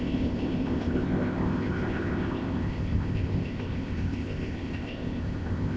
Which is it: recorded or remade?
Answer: remade